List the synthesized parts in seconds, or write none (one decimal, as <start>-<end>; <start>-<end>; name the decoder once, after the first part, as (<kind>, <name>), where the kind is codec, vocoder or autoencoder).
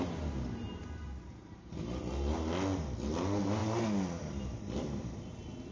3.6-5.2 (vocoder, BigVGAN v2)